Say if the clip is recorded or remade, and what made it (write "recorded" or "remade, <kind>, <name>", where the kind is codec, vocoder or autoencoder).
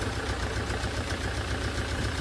remade, vocoder, BigVGAN v2